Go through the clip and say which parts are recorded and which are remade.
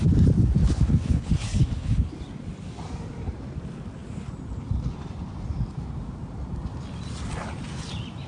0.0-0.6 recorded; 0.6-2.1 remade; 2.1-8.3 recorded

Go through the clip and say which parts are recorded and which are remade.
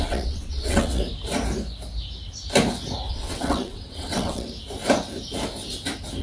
0.0-1.0 remade; 1.0-3.1 recorded; 3.1-4.5 remade; 4.5-6.2 recorded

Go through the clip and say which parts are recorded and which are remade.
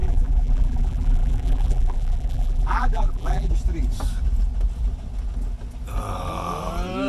0.0-3.5 remade; 3.5-7.1 recorded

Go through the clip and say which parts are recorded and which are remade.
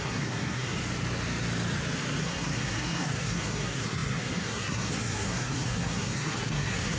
0.0-0.8 remade; 0.8-2.2 recorded; 2.2-7.0 remade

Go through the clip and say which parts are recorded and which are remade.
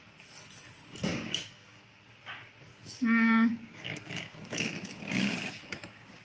0.0-1.1 recorded; 1.1-2.0 remade; 2.0-2.7 recorded; 2.7-6.2 remade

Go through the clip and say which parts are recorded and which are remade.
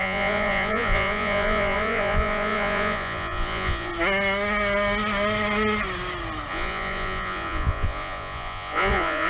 0.0-3.9 remade; 3.9-6.5 recorded; 6.5-9.3 remade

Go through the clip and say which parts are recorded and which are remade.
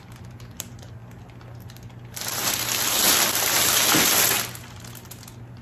0.0-5.6 recorded